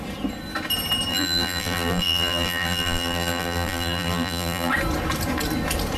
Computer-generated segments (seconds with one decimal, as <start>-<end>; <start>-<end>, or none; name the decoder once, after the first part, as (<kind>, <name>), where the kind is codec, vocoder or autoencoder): 1.1-4.7 (vocoder, BigVGAN v2)